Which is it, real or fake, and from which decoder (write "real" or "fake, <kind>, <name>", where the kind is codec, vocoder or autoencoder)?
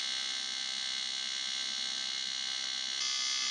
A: real